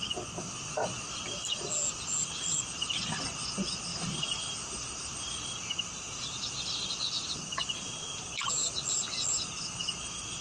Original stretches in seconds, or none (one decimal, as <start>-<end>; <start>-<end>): 0.0-3.9; 6.9-10.4

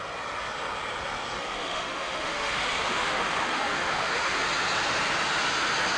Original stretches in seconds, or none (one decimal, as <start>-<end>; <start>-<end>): 0.0-1.4; 4.4-6.0

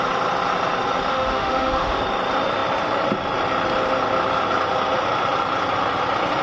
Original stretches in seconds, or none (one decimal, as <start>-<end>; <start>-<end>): 0.0-1.1; 2.0-6.4

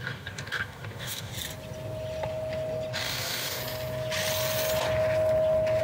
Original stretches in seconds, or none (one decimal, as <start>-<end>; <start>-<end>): 1.3-2.9; 3.6-5.8